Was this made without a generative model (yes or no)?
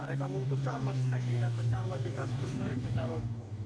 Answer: no